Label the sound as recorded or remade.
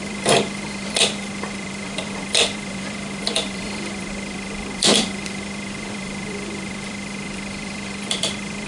remade